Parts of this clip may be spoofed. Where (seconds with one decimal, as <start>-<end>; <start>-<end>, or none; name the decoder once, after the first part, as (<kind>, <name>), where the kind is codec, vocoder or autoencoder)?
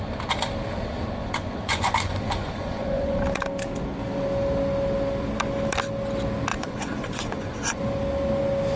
1.2-3.2 (vocoder, Vocos); 6.5-7.8